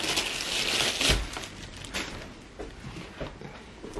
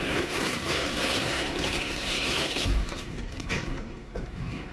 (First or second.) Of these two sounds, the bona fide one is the first